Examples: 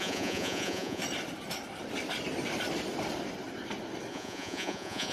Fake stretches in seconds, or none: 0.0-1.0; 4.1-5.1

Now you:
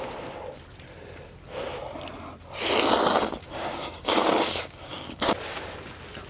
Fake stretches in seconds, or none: 3.4-5.3

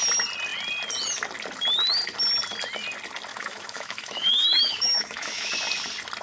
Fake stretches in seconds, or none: 3.3-5.5